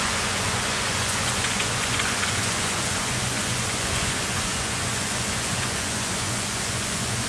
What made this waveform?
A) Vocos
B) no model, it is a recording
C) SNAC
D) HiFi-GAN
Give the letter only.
A